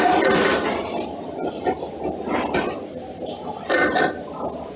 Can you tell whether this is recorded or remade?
recorded